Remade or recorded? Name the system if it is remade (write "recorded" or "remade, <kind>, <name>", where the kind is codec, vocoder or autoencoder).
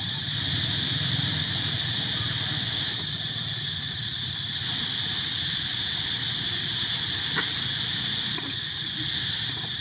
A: recorded